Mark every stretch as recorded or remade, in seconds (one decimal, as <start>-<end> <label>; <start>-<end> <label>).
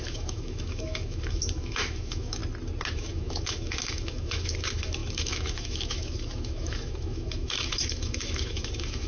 0.0-2.4 remade; 2.4-2.9 recorded; 2.9-9.1 remade